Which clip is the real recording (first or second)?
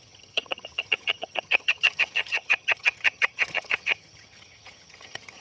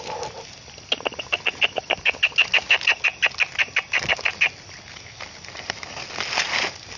second